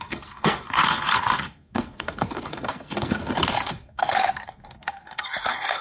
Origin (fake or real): fake